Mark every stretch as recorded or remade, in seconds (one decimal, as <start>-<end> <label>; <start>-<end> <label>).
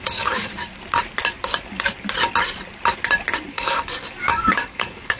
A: 0.0-0.5 remade; 0.5-3.5 recorded; 3.5-5.2 remade